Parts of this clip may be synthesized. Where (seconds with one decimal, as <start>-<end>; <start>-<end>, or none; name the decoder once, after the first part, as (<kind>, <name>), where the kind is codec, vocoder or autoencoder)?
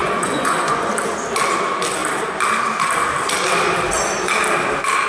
0.0-0.9 (vocoder, Vocos)